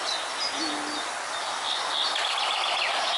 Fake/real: real